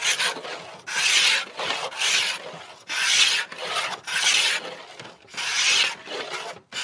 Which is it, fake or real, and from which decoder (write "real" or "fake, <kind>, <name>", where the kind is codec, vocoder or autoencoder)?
real